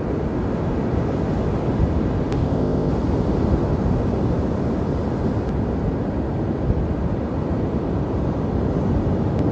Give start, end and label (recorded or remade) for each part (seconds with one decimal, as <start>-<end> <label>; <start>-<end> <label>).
0.0-2.4 recorded; 2.4-2.9 remade; 2.9-9.5 recorded